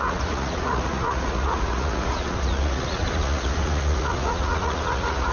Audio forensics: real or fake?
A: fake